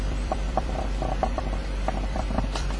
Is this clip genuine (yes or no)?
no